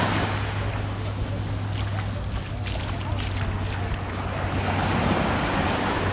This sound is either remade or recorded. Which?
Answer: recorded